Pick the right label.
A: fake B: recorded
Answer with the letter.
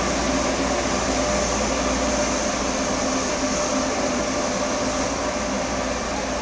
B